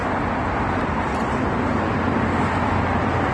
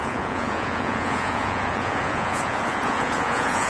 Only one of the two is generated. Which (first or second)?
second